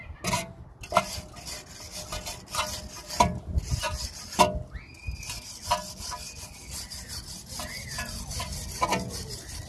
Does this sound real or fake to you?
real